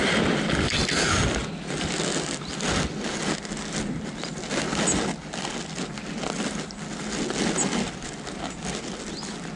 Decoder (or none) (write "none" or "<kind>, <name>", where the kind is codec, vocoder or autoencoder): none